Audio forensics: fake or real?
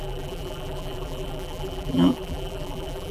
fake